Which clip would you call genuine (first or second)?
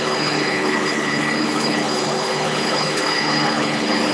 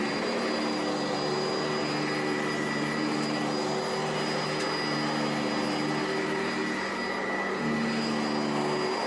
second